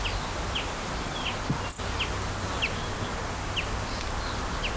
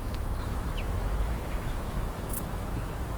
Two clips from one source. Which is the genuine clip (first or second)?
first